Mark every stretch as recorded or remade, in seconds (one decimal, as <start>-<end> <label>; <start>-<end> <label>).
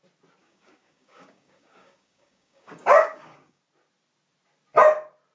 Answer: 0.0-0.4 recorded; 0.4-3.6 remade; 3.6-5.3 recorded